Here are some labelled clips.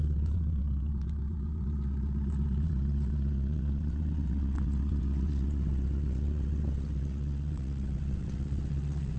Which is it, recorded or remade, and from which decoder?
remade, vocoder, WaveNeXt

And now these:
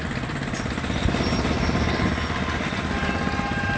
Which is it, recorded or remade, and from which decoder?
recorded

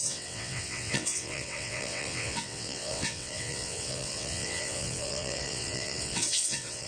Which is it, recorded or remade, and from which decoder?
remade, vocoder, WaveNeXt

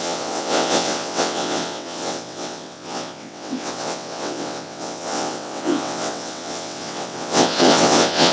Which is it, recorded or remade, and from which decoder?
remade, vocoder, WaveNeXt